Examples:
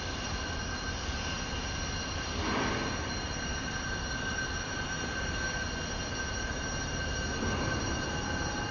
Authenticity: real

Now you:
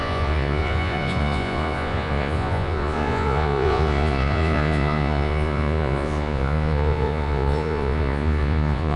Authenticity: fake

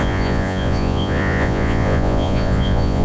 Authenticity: fake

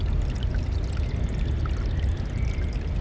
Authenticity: real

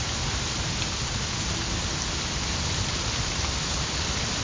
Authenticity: real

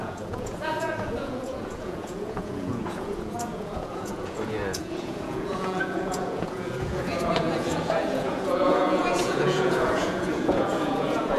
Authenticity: fake